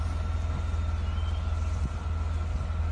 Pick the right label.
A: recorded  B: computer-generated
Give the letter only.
A